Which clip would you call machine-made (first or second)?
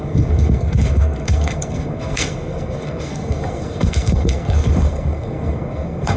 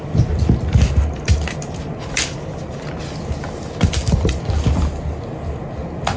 first